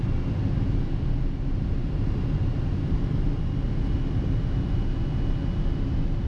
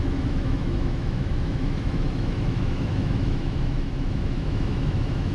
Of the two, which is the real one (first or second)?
first